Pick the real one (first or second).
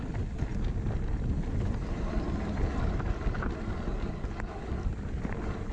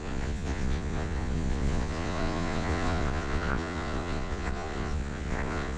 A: first